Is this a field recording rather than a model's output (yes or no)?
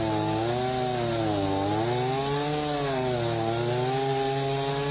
yes